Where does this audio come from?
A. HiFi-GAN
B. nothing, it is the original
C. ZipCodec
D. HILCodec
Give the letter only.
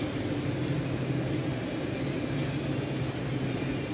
B